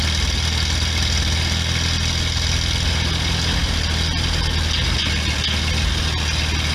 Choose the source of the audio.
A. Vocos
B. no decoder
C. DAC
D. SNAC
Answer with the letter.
B